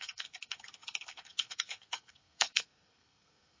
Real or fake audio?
fake